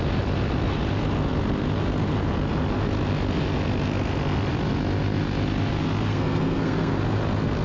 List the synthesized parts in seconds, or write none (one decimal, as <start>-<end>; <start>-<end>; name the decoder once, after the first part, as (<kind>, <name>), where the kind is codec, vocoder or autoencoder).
6.1-7.0 (codec, SNAC)

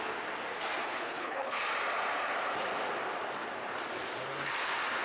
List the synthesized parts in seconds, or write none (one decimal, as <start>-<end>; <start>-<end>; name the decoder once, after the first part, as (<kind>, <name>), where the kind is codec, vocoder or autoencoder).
0.8-1.6 (codec, HILCodec)

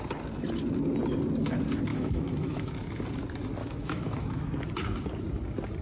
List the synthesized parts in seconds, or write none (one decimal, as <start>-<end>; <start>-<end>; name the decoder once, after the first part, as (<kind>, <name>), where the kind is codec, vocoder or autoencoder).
1.9-2.7 (autoencoder, DAC-VAE); 3.6-4.5

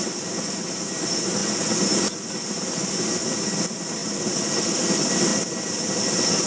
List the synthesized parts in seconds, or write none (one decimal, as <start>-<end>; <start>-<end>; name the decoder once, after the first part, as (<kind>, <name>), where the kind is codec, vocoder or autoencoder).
none

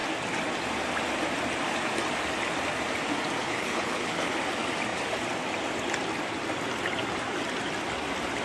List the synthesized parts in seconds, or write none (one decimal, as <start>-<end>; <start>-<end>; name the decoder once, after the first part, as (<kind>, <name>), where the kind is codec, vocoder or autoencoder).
3.4-4.3 (codec, HILCodec)

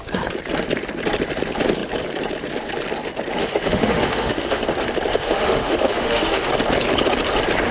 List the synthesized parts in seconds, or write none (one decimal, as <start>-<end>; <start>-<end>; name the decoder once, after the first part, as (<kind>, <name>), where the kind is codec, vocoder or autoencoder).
3.4-4.6 (autoencoder, DAC-VAE); 5.1-6.5

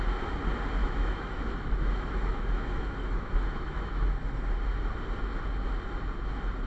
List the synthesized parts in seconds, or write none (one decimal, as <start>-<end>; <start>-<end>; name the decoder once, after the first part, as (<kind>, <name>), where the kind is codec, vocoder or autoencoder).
0.8-4.2 (autoencoder, DAC-VAE)

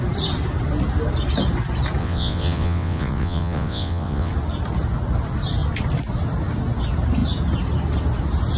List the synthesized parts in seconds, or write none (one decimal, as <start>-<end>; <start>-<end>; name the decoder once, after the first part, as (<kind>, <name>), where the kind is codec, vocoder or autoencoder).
2.0-4.3 (vocoder, WaveNeXt)